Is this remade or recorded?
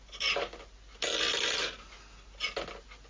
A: recorded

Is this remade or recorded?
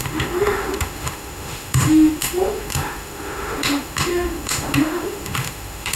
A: remade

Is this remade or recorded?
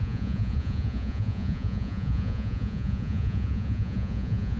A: remade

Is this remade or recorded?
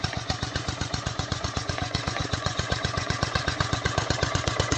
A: remade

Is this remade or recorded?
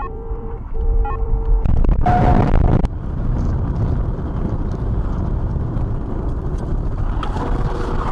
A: remade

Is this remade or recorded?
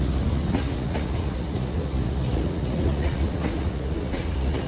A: remade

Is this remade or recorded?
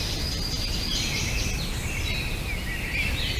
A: recorded